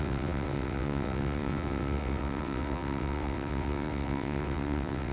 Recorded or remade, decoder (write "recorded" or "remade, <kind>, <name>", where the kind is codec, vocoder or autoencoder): remade, vocoder, WaveNeXt